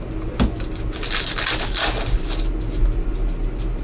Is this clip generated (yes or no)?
no